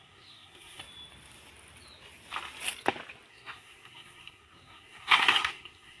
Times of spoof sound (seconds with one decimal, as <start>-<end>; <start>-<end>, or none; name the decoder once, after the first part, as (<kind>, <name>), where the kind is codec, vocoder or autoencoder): 0.0-0.8 (codec, SNAC); 3.3-6.0